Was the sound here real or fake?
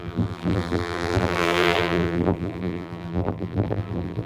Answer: fake